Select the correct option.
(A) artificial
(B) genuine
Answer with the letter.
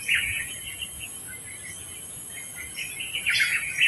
A